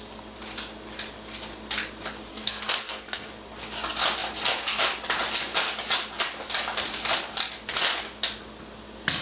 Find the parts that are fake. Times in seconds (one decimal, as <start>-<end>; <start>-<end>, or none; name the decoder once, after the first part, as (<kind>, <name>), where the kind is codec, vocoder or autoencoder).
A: 2.3-3.3 (codec, SNAC)